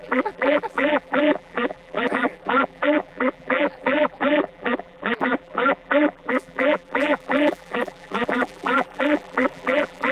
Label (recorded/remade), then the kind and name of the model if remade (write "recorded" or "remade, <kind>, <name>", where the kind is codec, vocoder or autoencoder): remade, vocoder, BigVGAN v2